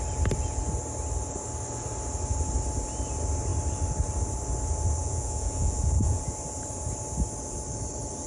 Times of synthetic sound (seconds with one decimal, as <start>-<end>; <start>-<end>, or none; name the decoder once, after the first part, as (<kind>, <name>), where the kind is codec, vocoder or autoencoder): 5.0-6.2 (vocoder, Vocos)